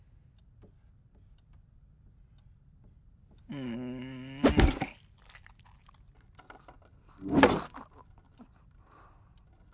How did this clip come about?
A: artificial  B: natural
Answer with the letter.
B